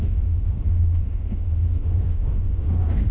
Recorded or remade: remade